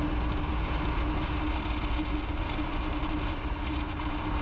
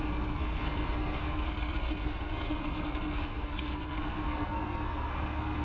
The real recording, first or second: first